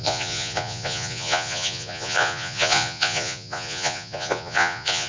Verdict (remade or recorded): remade